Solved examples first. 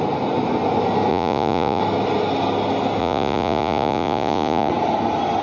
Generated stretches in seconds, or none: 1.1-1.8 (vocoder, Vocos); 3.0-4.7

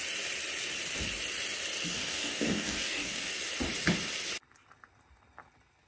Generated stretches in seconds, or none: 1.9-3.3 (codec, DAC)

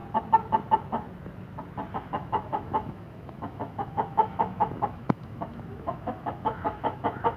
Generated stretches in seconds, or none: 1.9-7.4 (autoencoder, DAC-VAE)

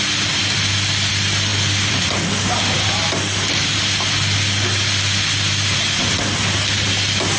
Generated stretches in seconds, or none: none

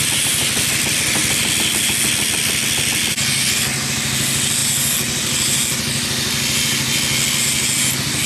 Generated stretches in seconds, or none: none

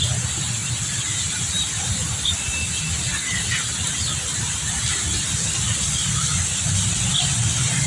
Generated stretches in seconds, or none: none